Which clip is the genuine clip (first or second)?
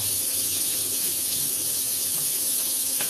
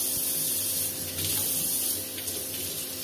second